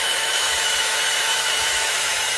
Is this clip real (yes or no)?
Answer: no